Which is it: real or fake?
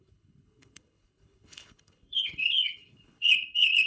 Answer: fake